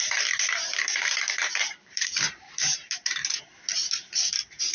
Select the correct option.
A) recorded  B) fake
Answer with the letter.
B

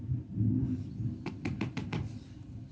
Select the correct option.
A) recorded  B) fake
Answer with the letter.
B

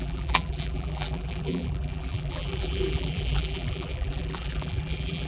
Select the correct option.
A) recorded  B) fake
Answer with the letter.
B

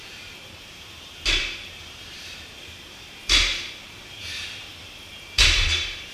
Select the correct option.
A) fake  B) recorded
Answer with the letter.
A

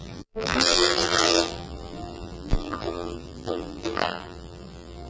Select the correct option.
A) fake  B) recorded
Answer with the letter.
A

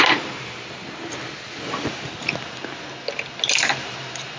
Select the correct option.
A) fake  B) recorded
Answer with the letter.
B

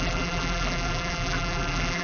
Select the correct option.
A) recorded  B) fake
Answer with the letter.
B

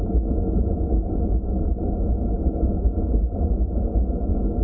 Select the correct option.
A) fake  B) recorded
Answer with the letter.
B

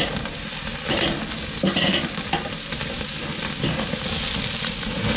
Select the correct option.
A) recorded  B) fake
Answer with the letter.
A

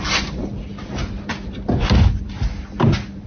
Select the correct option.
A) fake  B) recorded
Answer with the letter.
B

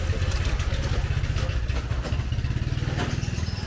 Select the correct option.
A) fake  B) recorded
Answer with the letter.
B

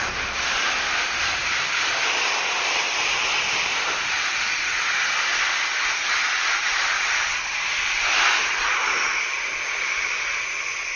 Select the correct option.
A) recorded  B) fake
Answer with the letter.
B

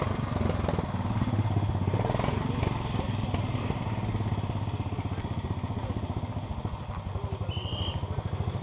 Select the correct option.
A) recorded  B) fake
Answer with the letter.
A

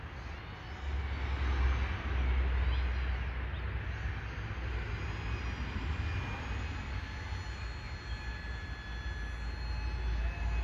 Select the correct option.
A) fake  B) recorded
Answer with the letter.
B